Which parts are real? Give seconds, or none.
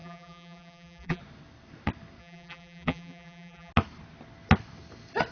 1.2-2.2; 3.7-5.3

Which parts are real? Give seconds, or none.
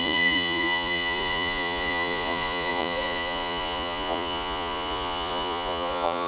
none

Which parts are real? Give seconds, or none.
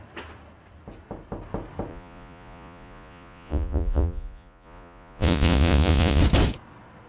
0.0-1.9; 6.2-7.1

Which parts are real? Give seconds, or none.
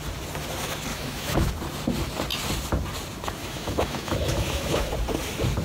0.0-0.9; 1.5-3.4; 4.9-5.6